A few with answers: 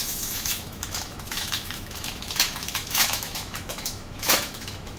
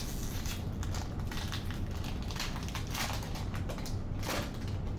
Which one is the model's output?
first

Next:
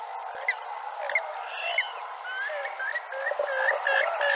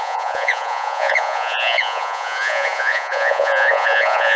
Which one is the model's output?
second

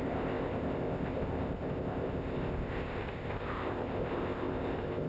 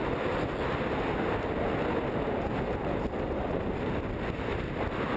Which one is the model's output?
first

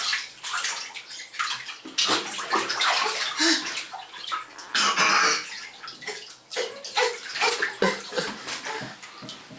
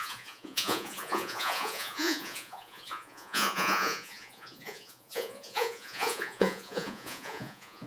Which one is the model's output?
second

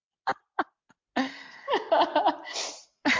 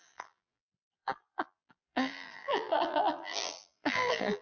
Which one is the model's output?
second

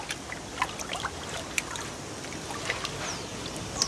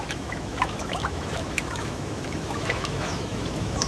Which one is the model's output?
second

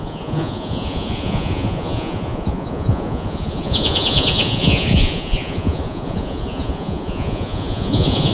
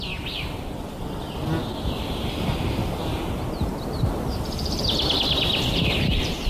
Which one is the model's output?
first